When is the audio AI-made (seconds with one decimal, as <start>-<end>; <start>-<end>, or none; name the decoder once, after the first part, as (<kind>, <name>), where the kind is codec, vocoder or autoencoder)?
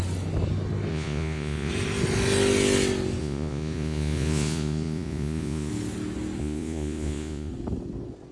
0.9-1.7 (vocoder, Vocos); 3.2-5.7; 6.4-7.5